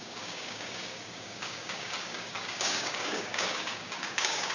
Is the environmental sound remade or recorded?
remade